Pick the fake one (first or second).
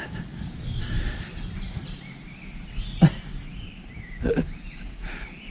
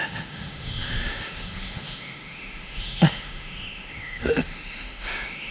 second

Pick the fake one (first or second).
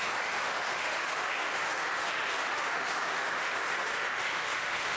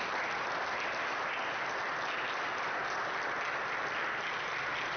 first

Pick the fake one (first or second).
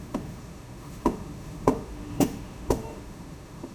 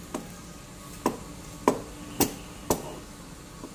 first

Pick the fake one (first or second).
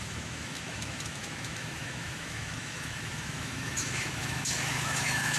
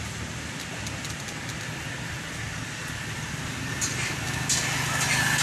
first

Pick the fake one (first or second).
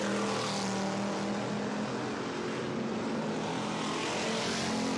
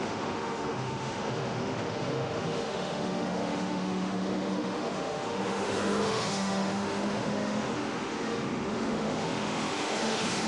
second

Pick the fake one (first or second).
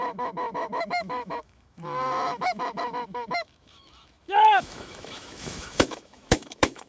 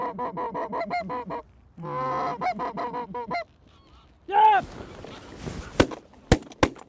first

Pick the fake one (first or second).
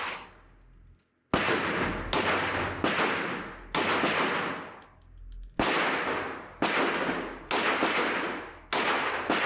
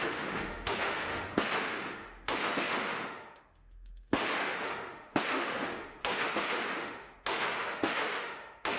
second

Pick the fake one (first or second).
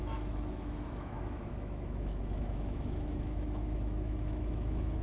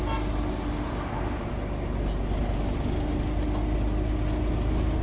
first